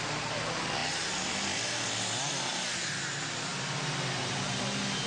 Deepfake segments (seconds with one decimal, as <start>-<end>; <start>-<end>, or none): none